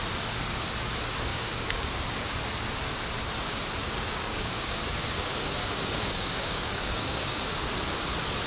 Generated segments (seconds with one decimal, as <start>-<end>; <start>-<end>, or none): 1.3-2.0; 3.8-7.4